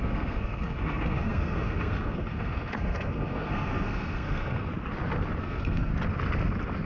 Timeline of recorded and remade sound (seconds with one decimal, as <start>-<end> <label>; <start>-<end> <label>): 0.0-4.7 remade; 4.7-5.4 recorded; 5.4-5.9 remade; 5.9-6.9 recorded